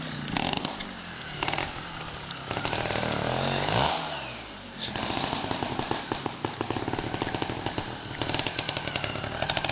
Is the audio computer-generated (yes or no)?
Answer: yes